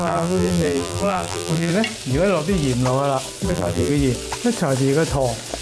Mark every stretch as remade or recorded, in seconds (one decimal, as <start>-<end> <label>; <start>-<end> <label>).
0.0-1.7 remade; 1.7-3.5 recorded; 3.5-3.9 remade; 3.9-5.6 recorded